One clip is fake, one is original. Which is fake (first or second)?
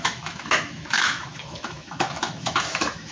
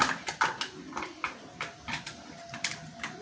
first